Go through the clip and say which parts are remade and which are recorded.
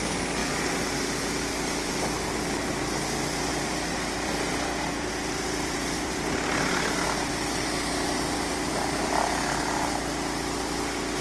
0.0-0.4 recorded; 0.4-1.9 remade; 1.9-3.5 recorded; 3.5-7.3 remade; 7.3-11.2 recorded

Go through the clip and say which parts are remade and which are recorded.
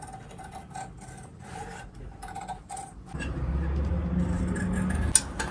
0.0-1.3 recorded; 1.3-4.6 remade; 4.6-5.5 recorded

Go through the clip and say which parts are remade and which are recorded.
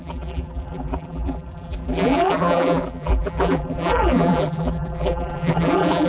0.0-6.1 remade